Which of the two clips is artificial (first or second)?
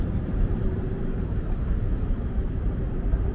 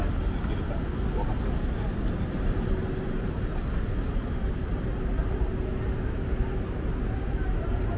first